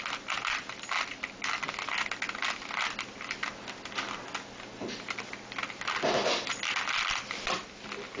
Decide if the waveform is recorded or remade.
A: recorded